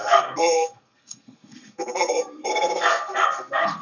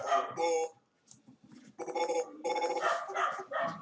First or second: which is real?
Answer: second